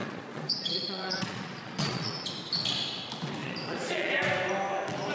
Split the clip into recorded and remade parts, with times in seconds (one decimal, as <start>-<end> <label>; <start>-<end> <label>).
0.0-2.3 remade; 2.3-3.4 recorded; 3.4-4.1 remade; 4.1-5.1 recorded